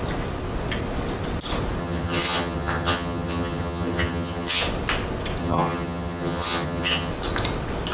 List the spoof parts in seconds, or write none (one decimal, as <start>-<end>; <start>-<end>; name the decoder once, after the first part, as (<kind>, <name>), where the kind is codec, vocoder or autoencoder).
1.8-4.6 (vocoder, HiFi-GAN); 5.4-7.1